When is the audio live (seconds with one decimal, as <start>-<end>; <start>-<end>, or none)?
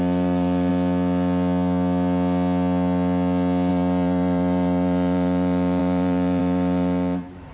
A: 0.7-3.7